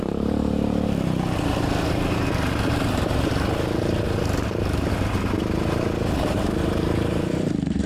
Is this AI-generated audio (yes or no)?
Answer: yes